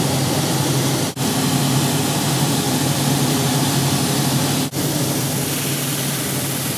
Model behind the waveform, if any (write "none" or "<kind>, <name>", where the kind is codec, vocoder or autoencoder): vocoder, BigVGAN v2